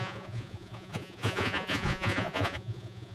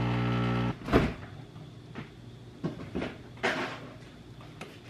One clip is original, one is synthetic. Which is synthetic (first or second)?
first